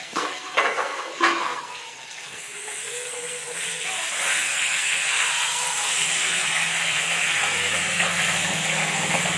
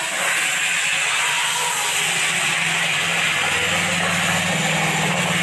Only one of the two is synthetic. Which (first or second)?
first